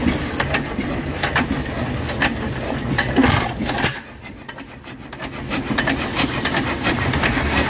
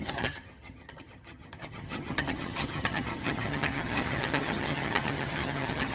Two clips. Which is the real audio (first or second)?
first